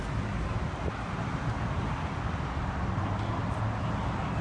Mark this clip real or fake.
real